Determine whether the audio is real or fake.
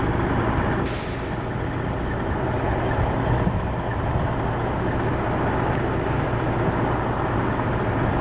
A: real